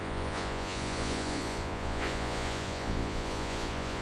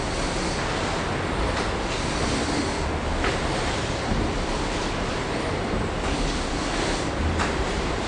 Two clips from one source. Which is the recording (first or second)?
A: second